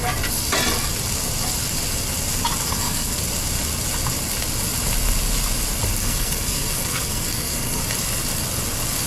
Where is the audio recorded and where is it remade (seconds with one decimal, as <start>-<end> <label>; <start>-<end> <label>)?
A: 0.0-2.7 recorded; 2.7-3.2 remade; 3.2-6.0 recorded; 6.0-7.8 remade; 7.8-9.1 recorded